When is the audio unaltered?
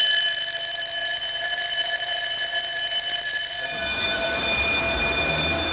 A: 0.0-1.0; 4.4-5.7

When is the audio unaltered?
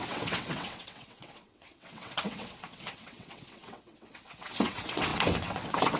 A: none